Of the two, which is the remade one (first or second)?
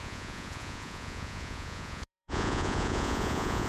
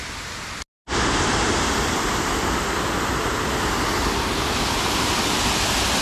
first